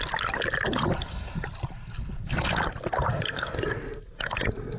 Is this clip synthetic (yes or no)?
no